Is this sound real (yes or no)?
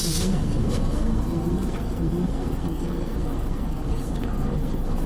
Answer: no